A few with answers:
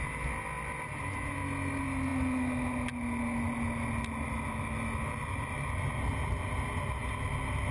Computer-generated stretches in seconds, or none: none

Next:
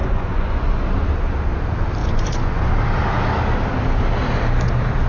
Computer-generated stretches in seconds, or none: 0.0-0.8 (vocoder, Vocos); 2.0-2.7

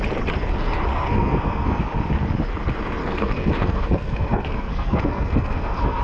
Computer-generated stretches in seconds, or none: 0.9-1.8 (codec, SNAC); 3.0-6.0

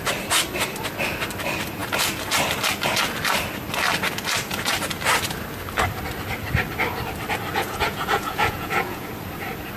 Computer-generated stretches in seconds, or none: 7.5-9.1 (vocoder, Vocos)

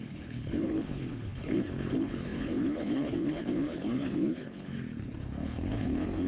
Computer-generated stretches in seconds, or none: 0.0-6.3 (codec, HILCodec)

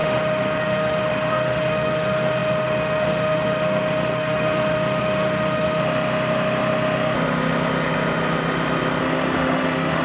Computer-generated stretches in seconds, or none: 0.0-5.8 (autoencoder, DAC-VAE); 9.0-10.0

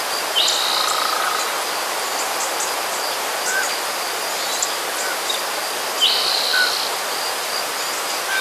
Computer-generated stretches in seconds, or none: 6.5-7.5 (vocoder, BigVGAN v2)